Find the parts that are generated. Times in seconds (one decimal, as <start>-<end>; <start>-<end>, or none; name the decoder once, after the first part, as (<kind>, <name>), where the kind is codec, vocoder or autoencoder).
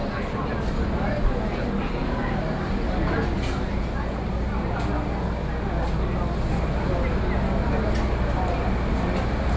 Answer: 2.0-3.3 (codec, DAC)